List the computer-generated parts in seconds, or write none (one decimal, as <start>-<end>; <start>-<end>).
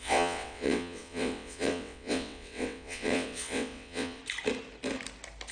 0.0-4.2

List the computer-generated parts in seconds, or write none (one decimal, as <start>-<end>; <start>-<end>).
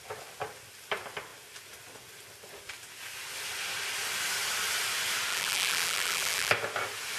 5.3-6.5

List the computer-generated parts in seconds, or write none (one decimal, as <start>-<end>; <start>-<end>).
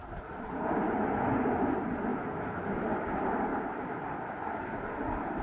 0.0-1.2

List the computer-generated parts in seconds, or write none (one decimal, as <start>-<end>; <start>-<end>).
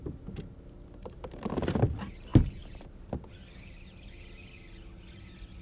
none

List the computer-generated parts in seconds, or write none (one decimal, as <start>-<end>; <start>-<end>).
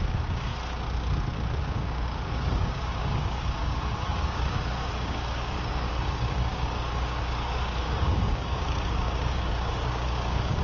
0.0-0.5; 1.6-10.6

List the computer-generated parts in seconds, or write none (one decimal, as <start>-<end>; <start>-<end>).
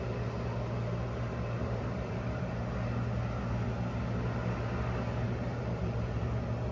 1.6-2.5; 5.5-6.3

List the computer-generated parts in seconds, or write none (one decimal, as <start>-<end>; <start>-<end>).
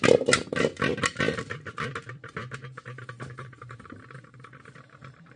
2.6-5.4